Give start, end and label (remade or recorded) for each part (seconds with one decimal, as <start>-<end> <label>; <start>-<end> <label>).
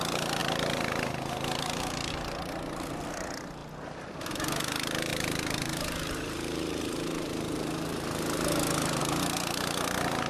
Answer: 0.0-5.1 recorded; 5.1-9.0 remade; 9.0-10.3 recorded